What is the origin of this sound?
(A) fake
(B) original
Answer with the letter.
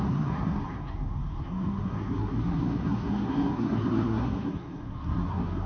A